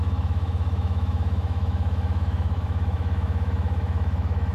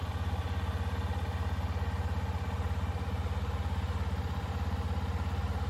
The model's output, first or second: first